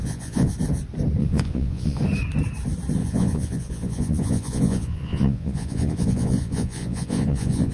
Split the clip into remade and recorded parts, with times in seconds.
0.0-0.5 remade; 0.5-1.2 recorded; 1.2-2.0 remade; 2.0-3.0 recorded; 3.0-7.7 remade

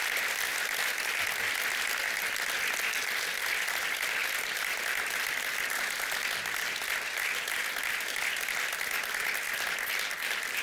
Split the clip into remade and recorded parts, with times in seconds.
0.0-0.5 recorded; 0.5-1.1 remade; 1.1-4.2 recorded; 4.2-4.9 remade; 4.9-10.6 recorded

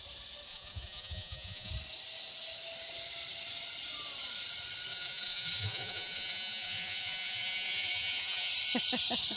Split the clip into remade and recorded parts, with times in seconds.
0.0-0.5 recorded; 0.5-1.7 remade; 1.7-4.9 recorded; 4.9-8.5 remade; 8.5-9.4 recorded

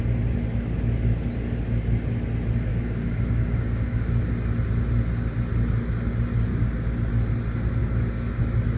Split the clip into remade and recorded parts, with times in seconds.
0.0-2.7 recorded; 2.7-4.3 remade; 4.3-6.5 recorded; 6.5-7.1 remade; 7.1-7.8 recorded; 7.8-8.4 remade; 8.4-8.8 recorded